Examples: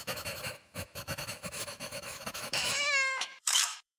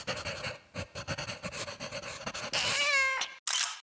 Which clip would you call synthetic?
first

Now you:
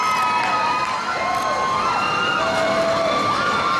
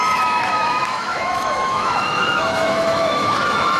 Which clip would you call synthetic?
second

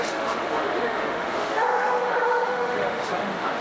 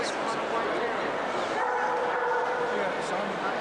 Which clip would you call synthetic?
first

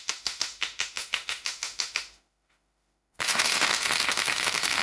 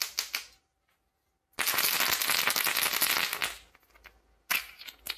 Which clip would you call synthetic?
first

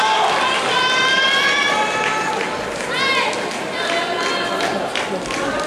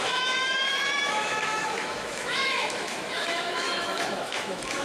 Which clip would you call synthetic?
second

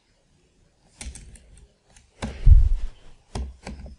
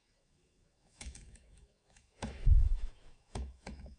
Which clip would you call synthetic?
second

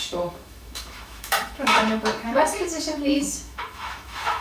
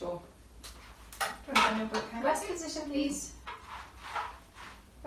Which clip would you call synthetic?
first